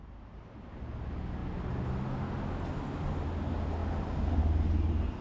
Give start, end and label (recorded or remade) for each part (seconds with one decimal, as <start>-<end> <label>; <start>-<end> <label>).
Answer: 0.0-5.2 recorded